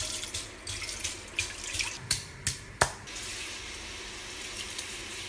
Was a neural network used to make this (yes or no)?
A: no